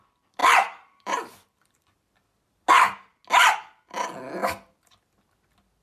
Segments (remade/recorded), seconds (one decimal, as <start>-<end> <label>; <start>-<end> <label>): 0.0-0.4 recorded; 0.4-2.1 remade; 2.1-4.4 recorded; 4.4-5.1 remade; 5.1-5.8 recorded